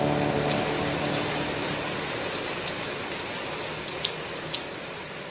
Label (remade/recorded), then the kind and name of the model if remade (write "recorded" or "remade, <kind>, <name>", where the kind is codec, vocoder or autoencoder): recorded